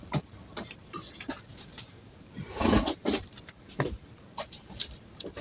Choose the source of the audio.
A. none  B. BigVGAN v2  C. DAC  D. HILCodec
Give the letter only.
B